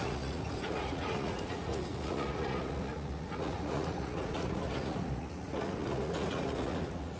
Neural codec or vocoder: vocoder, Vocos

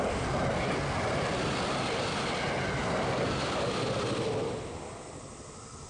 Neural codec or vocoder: none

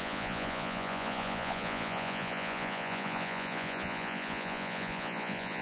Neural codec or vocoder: vocoder, Vocos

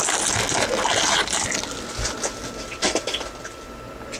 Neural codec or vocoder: none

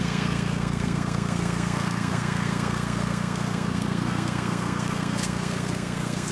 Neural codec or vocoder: codec, SNAC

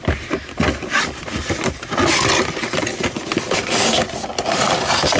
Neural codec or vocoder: none